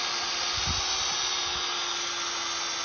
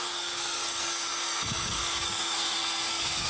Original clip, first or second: first